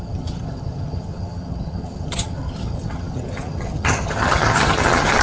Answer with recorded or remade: remade